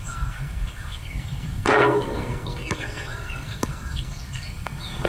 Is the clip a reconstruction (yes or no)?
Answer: yes